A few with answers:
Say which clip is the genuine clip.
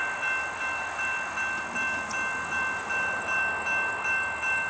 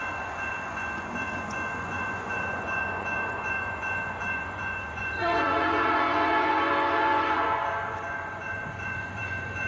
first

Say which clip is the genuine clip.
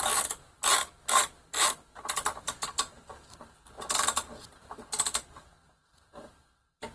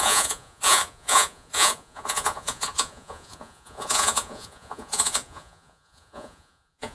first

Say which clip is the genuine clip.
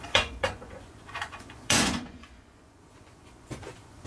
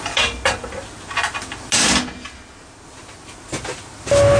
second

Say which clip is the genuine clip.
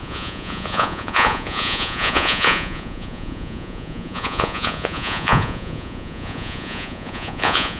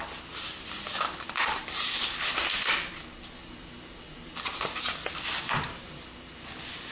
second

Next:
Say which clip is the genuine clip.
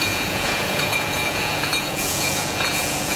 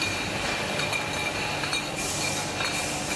second